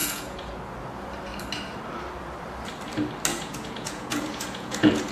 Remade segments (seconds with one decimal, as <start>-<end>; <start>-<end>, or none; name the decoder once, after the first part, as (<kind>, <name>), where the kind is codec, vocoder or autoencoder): 0.0-0.6 (vocoder, Vocos); 3.3-5.1